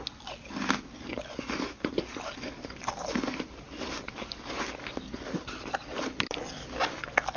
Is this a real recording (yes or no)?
yes